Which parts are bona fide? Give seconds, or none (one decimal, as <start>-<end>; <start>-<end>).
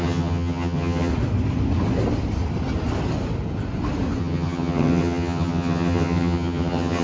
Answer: 1.1-4.2